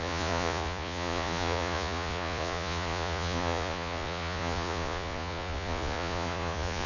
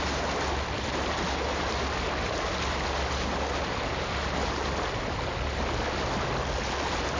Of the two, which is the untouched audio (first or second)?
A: second